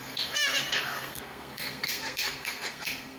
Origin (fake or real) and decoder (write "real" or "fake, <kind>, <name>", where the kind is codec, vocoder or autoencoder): fake, codec, SNAC